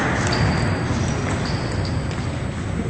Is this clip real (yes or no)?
yes